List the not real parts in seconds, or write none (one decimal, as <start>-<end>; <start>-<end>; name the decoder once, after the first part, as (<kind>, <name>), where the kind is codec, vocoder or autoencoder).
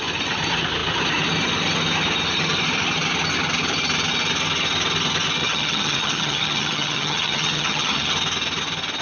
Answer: 5.4-8.1 (vocoder, HiFi-GAN)